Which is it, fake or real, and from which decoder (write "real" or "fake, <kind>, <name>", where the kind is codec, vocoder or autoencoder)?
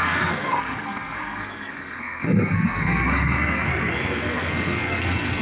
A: fake, codec, SNAC